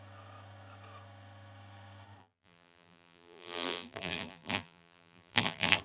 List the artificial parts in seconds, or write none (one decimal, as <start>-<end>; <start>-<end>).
2.2-5.8